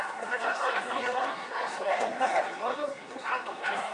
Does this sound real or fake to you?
fake